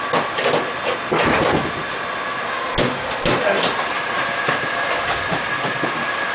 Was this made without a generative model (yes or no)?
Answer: yes